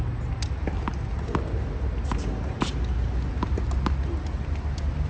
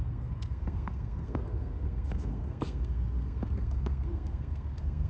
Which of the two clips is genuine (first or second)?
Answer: first